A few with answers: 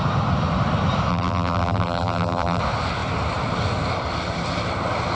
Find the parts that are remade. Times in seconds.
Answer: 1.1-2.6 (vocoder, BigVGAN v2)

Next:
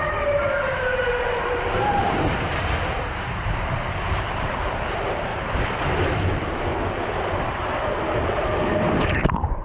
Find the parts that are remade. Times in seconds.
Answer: 0.0-6.7 (vocoder, BigVGAN v2); 9.1-9.6

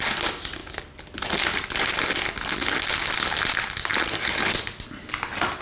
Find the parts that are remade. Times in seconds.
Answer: none

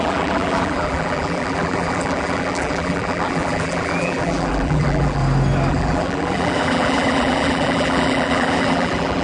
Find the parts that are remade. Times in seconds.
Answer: 0.0-5.2 (vocoder, BigVGAN v2); 5.7-9.2